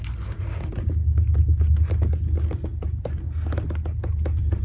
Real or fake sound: real